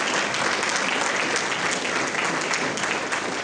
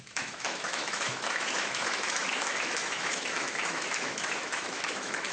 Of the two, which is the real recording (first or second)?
first